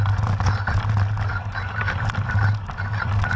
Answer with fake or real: real